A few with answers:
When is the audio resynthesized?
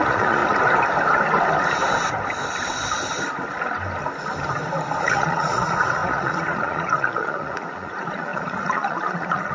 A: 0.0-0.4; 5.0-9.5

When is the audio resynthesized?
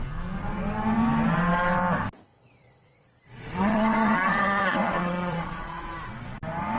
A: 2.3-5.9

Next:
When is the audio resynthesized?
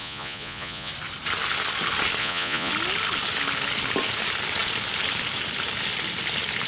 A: 0.0-0.9; 2.2-2.7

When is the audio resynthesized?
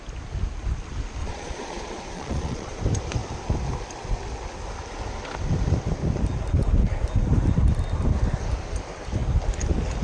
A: 1.2-2.8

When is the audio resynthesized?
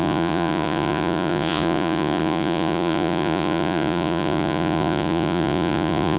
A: 0.0-6.2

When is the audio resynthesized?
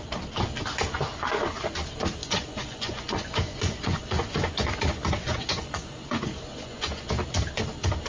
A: 2.2-7.1